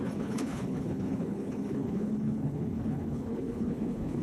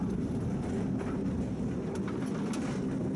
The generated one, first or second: first